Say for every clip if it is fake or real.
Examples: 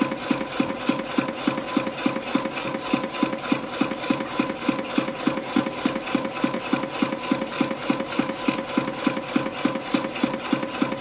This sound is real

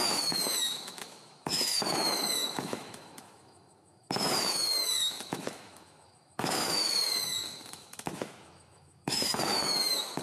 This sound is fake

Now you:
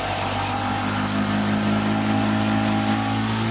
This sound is real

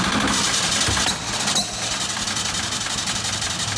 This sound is real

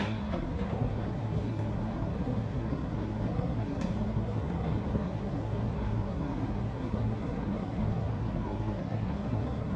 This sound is fake